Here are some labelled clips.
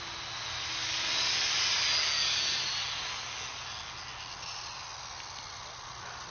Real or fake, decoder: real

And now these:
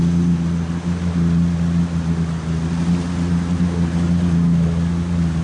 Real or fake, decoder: real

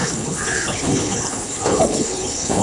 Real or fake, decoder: fake, codec, HILCodec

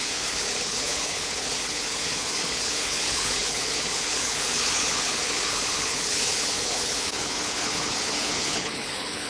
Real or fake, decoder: fake, codec, HILCodec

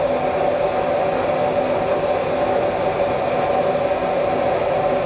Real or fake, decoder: real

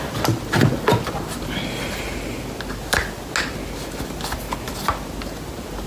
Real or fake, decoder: real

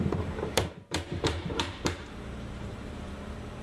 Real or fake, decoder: fake, vocoder, BigVGAN v2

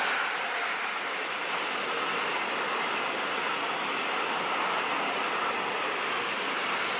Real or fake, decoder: real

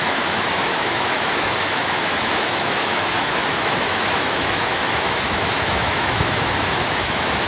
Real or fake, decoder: fake, autoencoder, DAC-VAE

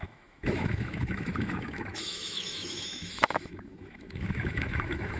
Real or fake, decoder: fake, autoencoder, DAC-VAE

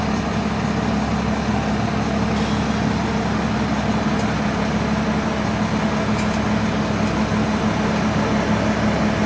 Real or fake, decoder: real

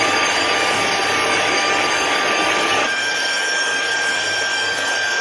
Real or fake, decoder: fake, codec, DAC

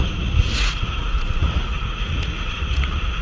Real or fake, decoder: fake, vocoder, Vocos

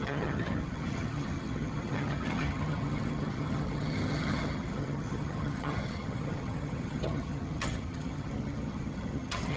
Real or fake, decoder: fake, vocoder, HiFi-GAN